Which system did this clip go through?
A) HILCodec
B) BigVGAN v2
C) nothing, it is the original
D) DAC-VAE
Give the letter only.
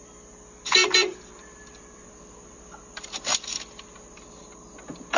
C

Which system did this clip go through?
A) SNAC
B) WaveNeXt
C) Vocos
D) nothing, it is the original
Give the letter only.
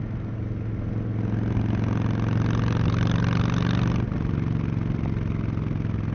D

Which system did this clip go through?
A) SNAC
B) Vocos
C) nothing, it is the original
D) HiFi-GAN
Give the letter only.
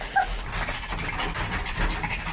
C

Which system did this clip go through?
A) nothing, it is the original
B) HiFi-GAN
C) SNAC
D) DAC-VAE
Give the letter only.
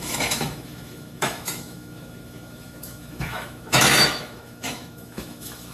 D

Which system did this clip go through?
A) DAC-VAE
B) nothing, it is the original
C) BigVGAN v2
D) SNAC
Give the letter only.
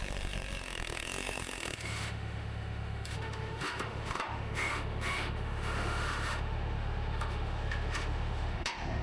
A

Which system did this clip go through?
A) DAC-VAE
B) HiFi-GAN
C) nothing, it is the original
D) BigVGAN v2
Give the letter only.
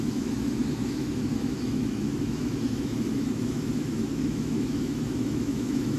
A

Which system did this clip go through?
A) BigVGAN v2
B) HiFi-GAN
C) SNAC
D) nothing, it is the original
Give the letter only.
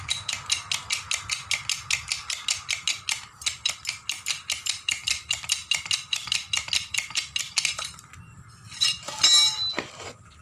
D